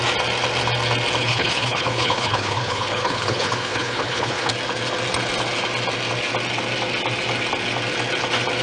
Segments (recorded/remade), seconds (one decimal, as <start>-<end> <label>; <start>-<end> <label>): 0.0-1.2 recorded; 1.2-4.5 remade; 4.5-8.6 recorded

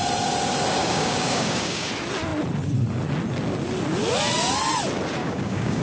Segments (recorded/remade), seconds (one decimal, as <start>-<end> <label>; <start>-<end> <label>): 0.0-0.8 recorded; 0.8-1.9 remade; 1.9-5.2 recorded; 5.2-5.8 remade